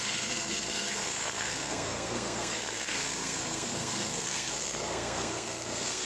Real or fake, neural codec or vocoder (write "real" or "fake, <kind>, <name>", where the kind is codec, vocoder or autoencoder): fake, codec, SNAC